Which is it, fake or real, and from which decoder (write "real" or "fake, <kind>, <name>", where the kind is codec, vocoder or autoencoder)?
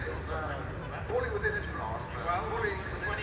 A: real